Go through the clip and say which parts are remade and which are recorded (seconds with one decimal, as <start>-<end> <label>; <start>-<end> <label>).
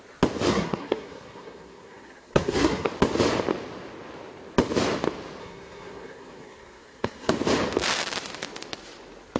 0.0-0.5 recorded; 0.5-2.9 remade; 2.9-5.4 recorded; 5.4-7.3 remade; 7.3-9.4 recorded